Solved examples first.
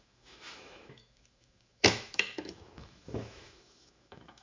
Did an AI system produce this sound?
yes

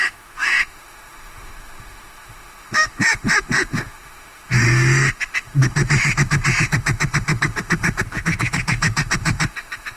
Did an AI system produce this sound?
yes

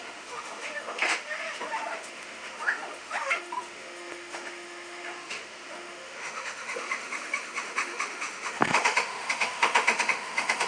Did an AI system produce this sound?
yes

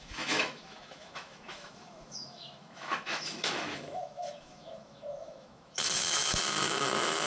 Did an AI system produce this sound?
yes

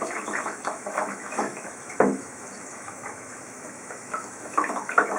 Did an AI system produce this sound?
yes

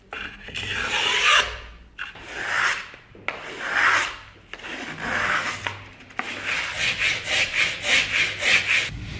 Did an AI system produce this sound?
no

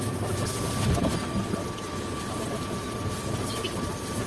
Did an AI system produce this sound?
no